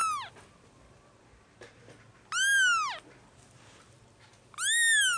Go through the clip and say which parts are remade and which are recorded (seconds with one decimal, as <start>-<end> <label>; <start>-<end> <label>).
0.0-5.2 recorded